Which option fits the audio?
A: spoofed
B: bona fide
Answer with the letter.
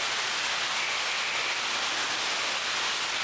B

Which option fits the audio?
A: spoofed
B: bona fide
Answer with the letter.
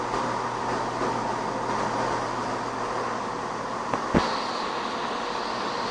B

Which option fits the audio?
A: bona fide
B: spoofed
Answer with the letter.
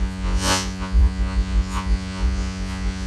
B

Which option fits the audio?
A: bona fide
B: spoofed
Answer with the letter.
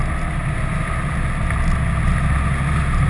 A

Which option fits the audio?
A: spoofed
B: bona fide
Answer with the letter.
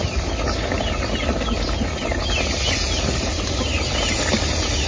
B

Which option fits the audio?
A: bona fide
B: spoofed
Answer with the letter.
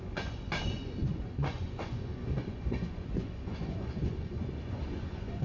B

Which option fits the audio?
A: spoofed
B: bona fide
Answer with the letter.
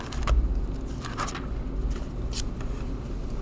B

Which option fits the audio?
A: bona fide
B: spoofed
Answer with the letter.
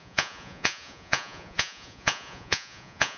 B